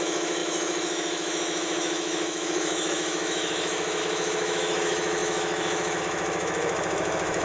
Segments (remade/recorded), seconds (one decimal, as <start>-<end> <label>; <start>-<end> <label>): 0.0-7.4 remade